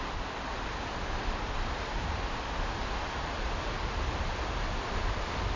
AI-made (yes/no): no